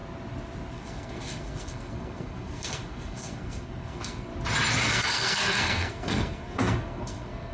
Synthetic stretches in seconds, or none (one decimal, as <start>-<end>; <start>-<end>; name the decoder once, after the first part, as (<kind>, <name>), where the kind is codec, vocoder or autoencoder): 0.7-4.3 (codec, SNAC); 4.9-7.5